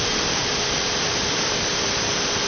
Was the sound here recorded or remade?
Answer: remade